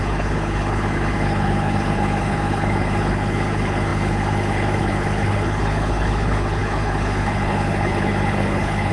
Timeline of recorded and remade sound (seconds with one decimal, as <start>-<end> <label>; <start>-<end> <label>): 0.0-8.9 remade